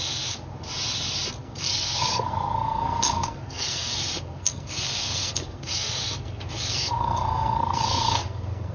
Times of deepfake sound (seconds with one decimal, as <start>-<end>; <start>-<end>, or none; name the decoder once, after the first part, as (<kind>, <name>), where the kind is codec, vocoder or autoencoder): 0.0-0.5 (codec, SNAC); 1.4-8.7